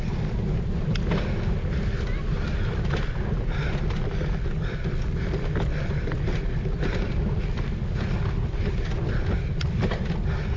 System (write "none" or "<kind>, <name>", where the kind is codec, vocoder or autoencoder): none